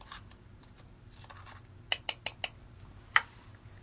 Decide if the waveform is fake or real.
real